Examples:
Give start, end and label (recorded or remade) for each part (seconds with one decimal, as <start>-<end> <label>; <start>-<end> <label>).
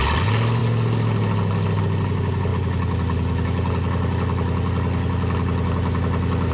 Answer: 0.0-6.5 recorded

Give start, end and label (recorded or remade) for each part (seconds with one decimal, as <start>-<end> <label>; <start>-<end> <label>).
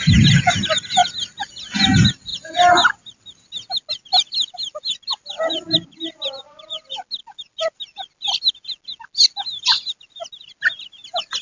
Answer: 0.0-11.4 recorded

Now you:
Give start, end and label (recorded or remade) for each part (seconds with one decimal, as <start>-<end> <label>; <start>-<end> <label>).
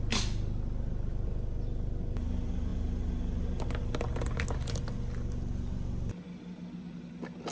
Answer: 0.0-7.5 recorded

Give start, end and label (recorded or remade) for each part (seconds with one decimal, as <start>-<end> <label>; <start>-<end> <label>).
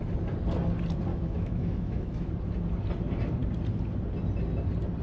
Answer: 0.0-1.1 recorded; 1.1-2.3 remade; 2.3-5.0 recorded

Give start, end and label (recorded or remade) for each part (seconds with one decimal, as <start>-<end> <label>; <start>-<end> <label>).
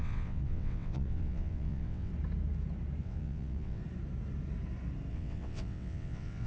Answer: 0.0-2.1 remade; 2.1-3.0 recorded; 3.0-3.8 remade; 3.8-5.1 recorded; 5.1-6.5 remade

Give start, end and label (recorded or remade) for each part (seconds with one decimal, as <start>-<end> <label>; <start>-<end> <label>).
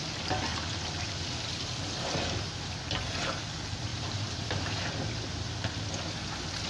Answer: 0.0-3.9 recorded; 3.9-4.9 remade; 4.9-6.7 recorded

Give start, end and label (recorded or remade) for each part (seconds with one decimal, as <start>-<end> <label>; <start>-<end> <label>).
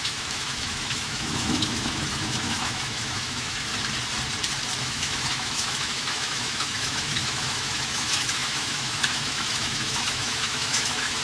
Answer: 0.0-3.7 remade; 3.7-4.8 recorded; 4.8-11.2 remade